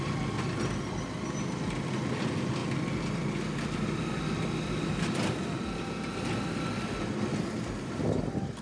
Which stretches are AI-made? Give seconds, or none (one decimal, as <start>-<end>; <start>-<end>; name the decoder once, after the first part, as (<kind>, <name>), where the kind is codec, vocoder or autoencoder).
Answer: none